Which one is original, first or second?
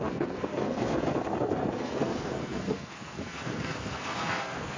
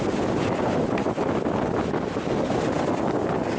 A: second